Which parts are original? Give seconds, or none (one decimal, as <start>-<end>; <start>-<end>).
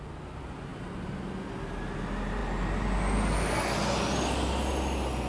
0.0-5.3